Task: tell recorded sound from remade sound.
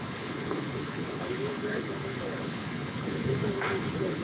remade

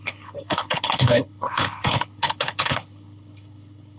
remade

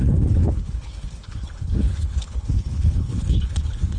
remade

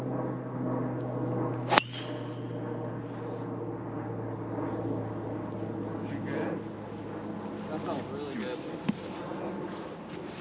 recorded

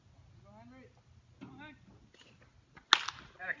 recorded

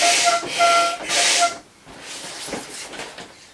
recorded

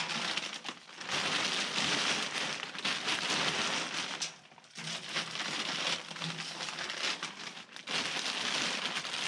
recorded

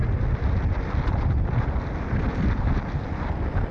recorded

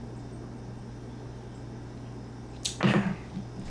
recorded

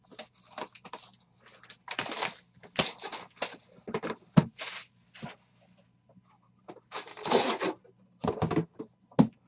recorded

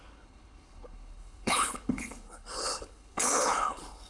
remade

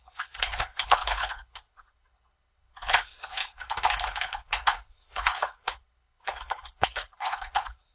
remade